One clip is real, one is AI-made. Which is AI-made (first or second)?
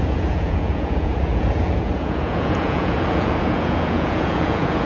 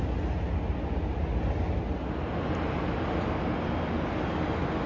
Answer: first